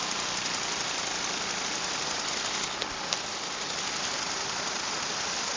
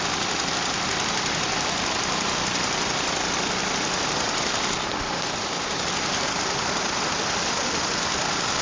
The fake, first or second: second